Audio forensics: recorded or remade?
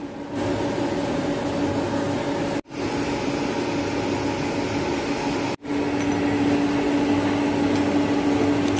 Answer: recorded